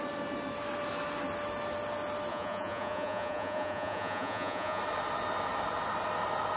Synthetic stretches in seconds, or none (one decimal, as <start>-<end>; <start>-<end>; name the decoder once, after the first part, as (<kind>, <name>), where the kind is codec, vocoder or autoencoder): 2.3-4.8 (vocoder, Vocos)